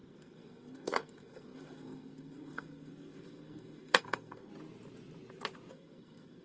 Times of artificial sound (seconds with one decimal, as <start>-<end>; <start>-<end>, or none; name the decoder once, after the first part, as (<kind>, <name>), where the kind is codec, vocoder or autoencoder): 0.0-4.5 (codec, SNAC); 5.7-6.4